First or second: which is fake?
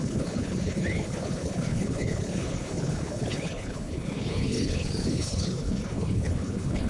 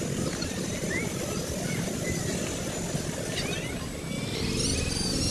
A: first